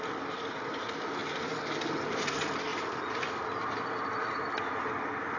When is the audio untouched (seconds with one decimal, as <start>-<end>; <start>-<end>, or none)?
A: 0.0-1.2; 1.7-2.7; 3.4-5.4